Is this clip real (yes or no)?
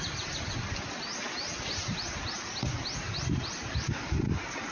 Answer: yes